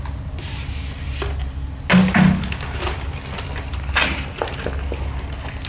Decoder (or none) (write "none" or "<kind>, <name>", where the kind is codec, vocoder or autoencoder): none